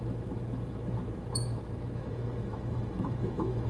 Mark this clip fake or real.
fake